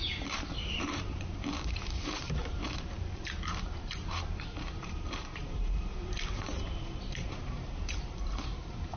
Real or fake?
fake